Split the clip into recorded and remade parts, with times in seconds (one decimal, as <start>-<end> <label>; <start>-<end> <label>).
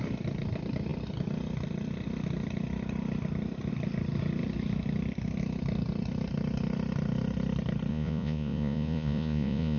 0.0-7.9 recorded; 7.9-9.8 remade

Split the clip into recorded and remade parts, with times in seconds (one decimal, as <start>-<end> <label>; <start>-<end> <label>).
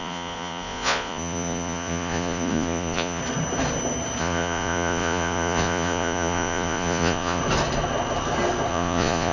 0.0-3.2 remade; 3.2-4.2 recorded; 4.2-7.4 remade; 7.4-8.7 recorded; 8.7-9.3 remade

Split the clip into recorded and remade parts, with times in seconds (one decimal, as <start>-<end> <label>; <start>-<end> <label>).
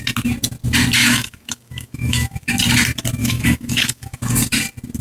0.0-1.0 recorded; 1.0-2.5 remade; 2.5-3.2 recorded; 3.2-4.2 remade; 4.2-5.0 recorded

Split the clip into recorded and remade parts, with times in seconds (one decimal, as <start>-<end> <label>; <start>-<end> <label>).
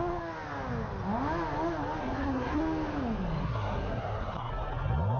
0.0-2.0 recorded; 2.0-2.6 remade; 2.6-3.4 recorded; 3.4-4.5 remade; 4.5-5.2 recorded